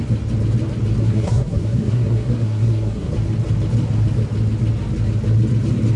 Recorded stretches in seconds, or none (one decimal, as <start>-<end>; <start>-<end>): 0.0-1.0; 3.1-6.0